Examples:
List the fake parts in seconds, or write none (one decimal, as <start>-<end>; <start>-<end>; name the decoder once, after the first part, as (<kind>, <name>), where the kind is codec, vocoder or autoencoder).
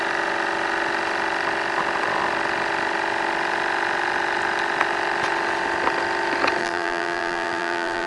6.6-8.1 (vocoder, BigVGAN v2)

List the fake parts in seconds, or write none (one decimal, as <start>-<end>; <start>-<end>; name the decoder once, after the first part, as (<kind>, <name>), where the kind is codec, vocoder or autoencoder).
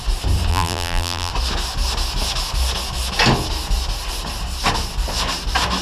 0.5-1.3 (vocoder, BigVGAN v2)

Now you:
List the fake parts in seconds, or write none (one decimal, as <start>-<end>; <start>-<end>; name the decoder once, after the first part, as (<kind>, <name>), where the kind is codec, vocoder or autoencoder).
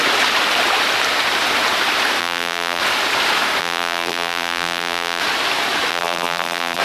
2.2-2.8 (vocoder, BigVGAN v2); 3.6-5.2; 5.9-6.8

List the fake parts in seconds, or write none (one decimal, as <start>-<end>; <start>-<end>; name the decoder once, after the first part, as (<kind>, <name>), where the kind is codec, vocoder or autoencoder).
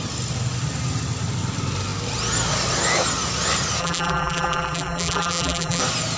3.8-5.8 (vocoder, BigVGAN v2)